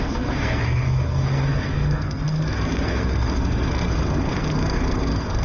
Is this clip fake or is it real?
fake